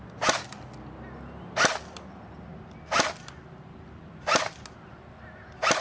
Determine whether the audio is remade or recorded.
recorded